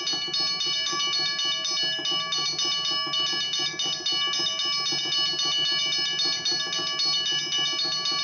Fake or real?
real